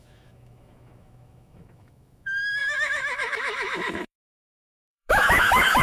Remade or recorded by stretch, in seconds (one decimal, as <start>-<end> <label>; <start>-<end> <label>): 0.0-5.8 remade